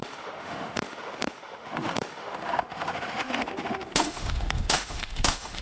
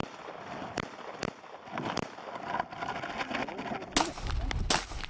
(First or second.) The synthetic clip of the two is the first